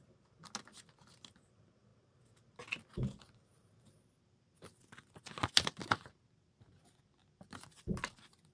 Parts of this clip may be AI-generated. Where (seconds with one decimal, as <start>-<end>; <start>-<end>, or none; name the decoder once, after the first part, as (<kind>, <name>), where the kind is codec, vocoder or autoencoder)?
none